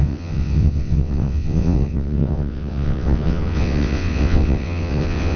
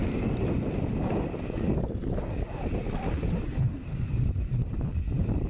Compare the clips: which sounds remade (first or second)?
first